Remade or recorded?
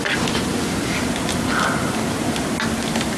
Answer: recorded